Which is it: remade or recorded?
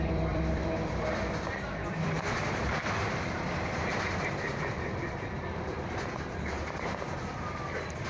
remade